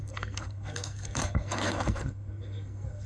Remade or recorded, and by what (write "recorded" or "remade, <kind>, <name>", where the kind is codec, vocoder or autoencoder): remade, codec, SNAC